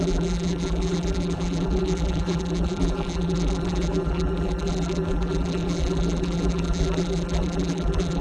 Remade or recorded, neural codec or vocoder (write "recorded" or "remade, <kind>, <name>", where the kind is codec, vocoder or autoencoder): remade, vocoder, BigVGAN v2